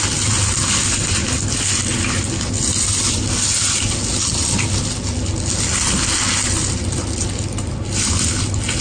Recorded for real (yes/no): yes